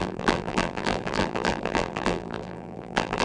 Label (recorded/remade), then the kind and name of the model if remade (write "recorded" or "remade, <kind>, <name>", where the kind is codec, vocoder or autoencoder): remade, vocoder, BigVGAN v2